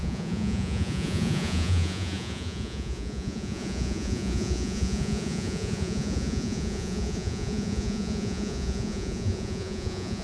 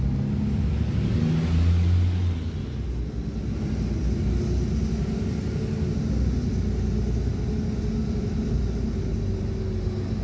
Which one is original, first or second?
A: second